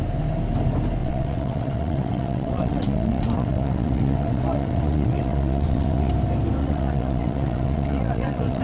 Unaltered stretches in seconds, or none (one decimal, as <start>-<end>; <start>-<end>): 0.0-1.0; 6.1-6.6